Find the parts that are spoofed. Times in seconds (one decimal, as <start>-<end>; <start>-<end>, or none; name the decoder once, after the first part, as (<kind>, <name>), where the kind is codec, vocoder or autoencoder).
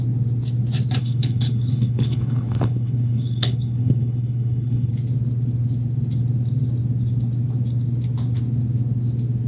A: 1.0-4.9 (codec, HILCodec)